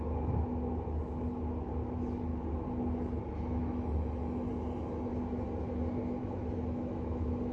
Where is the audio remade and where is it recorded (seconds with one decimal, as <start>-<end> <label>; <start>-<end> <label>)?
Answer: 0.0-2.3 remade; 2.3-3.3 recorded; 3.3-5.1 remade; 5.1-6.2 recorded; 6.2-7.5 remade